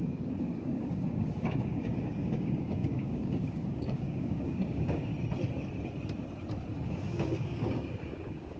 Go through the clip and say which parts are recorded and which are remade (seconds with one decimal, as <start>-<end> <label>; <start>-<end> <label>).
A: 0.0-5.1 remade; 5.1-6.9 recorded; 6.9-8.6 remade